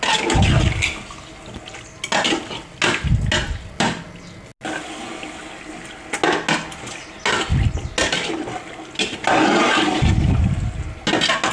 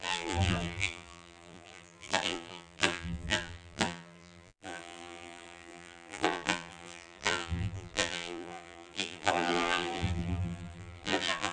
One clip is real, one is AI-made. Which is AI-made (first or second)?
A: second